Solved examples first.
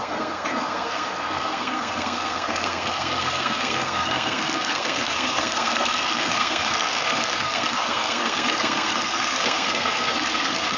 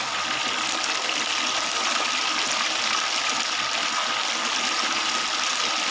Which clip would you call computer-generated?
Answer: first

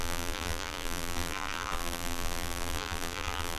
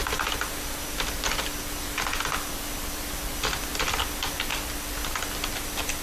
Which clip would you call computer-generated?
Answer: first